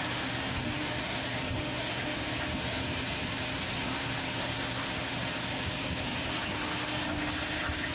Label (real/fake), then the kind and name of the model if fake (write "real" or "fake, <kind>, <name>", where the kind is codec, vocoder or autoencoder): real